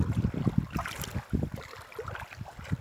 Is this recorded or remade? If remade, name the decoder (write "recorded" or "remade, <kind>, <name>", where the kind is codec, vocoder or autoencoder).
recorded